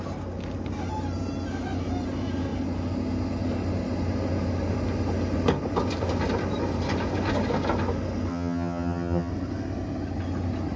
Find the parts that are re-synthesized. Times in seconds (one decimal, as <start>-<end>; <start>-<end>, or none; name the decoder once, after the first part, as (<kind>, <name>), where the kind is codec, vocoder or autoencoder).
8.3-9.3 (vocoder, HiFi-GAN)